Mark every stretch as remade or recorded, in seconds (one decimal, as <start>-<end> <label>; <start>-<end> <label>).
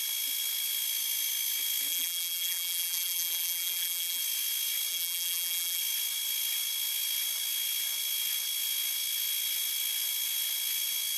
0.0-1.9 recorded; 1.9-4.2 remade; 4.2-4.9 recorded; 4.9-5.8 remade; 5.8-11.2 recorded